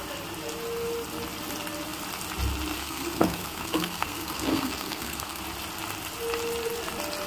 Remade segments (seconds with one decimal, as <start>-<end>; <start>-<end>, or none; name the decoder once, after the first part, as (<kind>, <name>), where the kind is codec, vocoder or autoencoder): 2.8-5.4 (codec, SNAC)

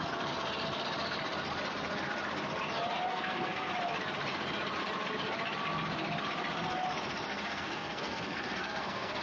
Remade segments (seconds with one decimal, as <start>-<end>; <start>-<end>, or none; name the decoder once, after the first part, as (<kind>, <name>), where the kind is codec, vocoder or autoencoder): 3.1-3.7 (codec, SNAC); 7.3-9.2

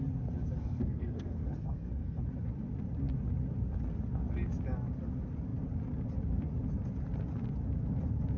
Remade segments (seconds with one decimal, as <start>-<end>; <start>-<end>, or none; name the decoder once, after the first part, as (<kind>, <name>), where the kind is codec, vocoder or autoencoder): 0.6-2.2 (codec, SNAC)

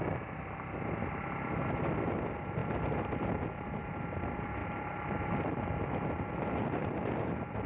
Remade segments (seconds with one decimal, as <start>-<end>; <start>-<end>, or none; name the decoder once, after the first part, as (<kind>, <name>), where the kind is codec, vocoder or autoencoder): none

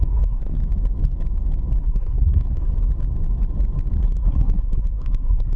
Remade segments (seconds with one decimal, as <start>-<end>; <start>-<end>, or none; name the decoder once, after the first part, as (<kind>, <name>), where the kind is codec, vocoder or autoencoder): 0.0-0.6 (codec, SNAC); 1.8-2.7; 4.0-5.6

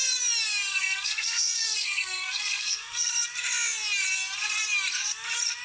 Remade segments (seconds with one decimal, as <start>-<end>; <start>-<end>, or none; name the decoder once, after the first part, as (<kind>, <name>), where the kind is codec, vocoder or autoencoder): 0.7-3.1 (codec, SNAC)

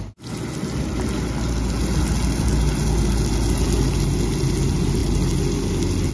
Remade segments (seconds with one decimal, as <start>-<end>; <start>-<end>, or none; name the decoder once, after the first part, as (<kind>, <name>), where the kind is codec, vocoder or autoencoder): none